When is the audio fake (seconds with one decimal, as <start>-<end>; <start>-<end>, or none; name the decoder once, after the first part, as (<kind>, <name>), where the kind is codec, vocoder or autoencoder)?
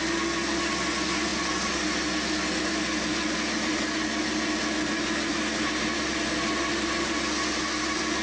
none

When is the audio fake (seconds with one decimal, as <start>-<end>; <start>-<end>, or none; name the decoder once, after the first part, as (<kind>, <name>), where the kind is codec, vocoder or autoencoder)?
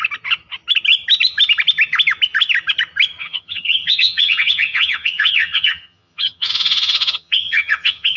3.2-8.2 (vocoder, HiFi-GAN)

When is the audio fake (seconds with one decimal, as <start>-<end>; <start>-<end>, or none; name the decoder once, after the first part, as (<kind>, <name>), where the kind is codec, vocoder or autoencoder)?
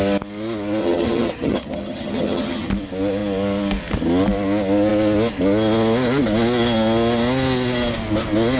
0.8-2.7 (vocoder, HiFi-GAN)